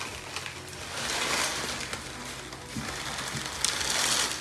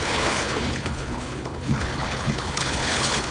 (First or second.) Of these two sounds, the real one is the first